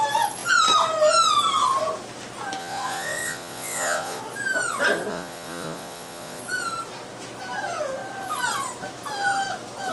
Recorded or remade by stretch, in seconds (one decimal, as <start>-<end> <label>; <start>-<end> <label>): 0.0-2.6 recorded; 2.6-4.2 remade; 4.2-5.1 recorded; 5.1-6.4 remade; 6.4-9.9 recorded